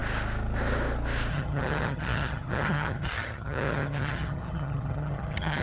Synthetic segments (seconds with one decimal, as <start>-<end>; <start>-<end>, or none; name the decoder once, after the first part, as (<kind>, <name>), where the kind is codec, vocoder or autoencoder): 1.3-5.6 (vocoder, HiFi-GAN)